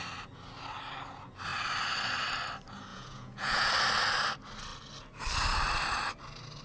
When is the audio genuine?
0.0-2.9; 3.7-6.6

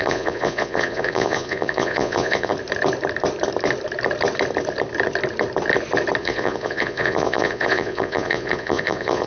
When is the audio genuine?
2.5-6.2

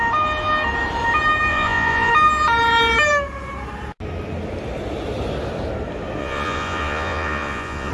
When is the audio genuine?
0.0-1.5; 2.1-6.2

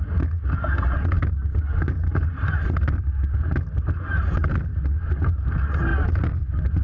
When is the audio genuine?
0.0-6.8

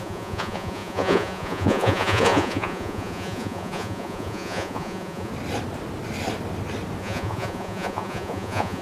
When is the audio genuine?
5.3-7.0

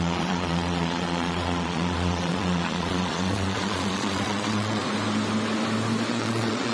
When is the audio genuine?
4.8-6.1

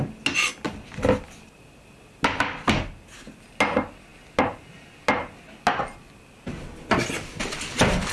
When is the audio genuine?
0.0-8.1

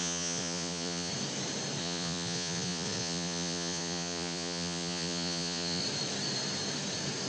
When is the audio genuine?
1.1-1.8; 5.8-7.3